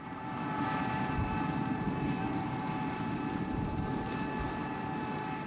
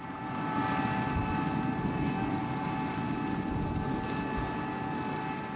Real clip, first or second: second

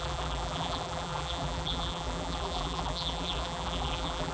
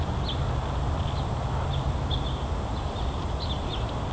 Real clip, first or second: second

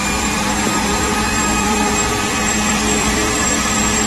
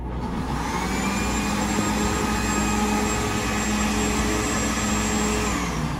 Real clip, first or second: second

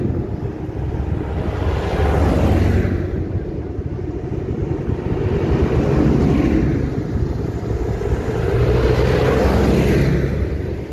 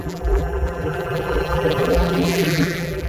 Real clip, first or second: first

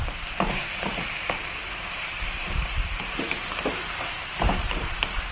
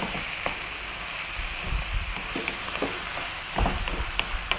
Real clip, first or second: second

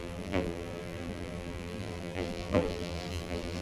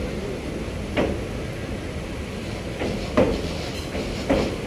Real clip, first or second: second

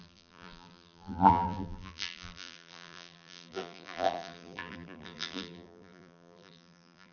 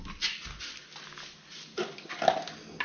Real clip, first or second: second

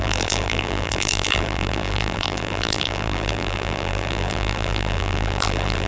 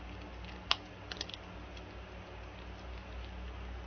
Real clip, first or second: second